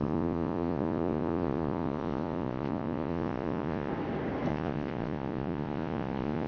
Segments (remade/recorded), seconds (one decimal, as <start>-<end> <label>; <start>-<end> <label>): 0.0-3.9 remade; 3.9-4.5 recorded; 4.5-6.5 remade